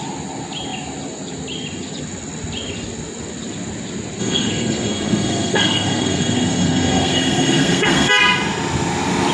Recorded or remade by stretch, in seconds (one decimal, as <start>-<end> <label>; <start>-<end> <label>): 0.0-4.2 recorded; 4.2-8.1 remade; 8.1-9.3 recorded